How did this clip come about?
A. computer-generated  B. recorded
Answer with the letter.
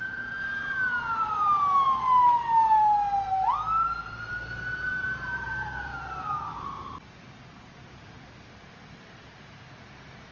B